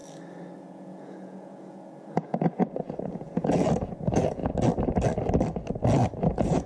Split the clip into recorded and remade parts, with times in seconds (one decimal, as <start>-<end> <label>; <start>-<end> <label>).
0.0-0.6 recorded; 0.6-4.4 remade; 4.4-6.2 recorded; 6.2-6.7 remade